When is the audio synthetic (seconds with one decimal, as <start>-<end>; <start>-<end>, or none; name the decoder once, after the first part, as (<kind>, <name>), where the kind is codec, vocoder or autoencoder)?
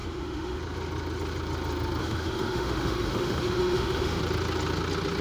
0.0-0.6 (autoencoder, DAC-VAE); 2.0-4.2